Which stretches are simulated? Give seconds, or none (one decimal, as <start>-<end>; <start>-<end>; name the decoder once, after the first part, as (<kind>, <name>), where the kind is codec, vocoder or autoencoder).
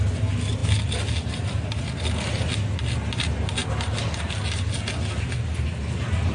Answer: none